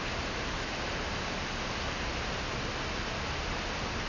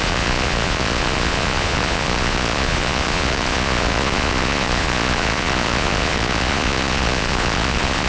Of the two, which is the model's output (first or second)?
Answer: second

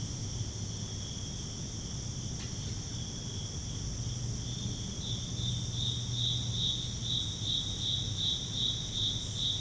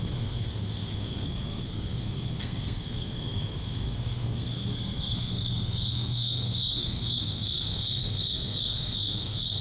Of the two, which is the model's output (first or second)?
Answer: second